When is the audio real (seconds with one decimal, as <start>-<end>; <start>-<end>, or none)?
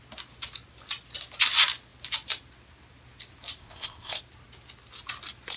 0.0-3.6; 4.2-5.6